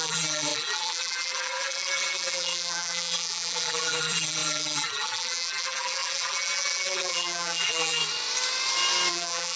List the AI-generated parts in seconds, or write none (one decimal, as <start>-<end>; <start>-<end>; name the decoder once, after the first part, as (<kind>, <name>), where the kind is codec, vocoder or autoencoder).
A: 0.0-8.0 (vocoder, BigVGAN v2); 9.1-9.6